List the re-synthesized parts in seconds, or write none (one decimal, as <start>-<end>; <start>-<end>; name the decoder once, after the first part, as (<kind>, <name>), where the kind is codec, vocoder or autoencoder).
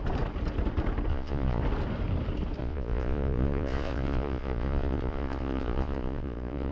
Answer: 1.1-1.6 (vocoder, Vocos); 2.6-6.7